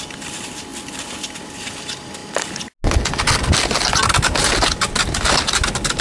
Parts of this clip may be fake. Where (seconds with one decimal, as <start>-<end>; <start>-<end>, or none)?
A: 0.0-2.2